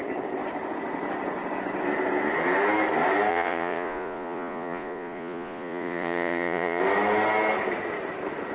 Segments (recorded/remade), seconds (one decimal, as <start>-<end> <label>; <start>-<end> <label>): 0.0-3.3 recorded; 3.3-6.8 remade; 6.8-8.5 recorded